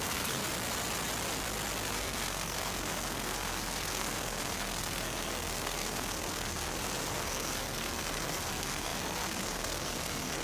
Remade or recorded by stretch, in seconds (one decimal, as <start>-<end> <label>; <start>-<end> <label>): 0.0-0.4 remade; 0.4-1.9 recorded; 1.9-10.4 remade

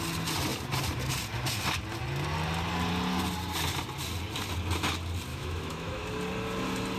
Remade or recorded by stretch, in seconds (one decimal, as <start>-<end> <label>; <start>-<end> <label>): 0.0-5.3 recorded; 5.3-6.0 remade; 6.0-7.0 recorded

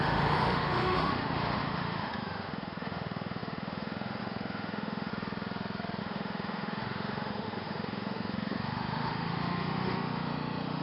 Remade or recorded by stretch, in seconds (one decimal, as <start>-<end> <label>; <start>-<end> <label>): 0.0-5.1 remade; 5.1-6.0 recorded; 6.0-10.8 remade